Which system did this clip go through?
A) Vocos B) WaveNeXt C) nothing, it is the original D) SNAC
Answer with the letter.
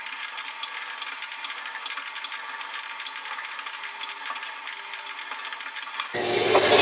C